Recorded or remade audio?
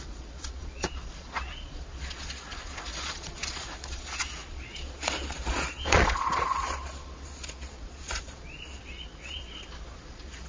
remade